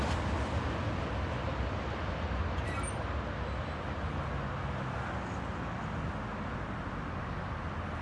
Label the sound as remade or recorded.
recorded